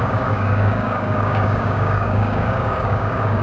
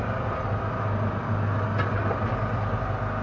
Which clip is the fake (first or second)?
first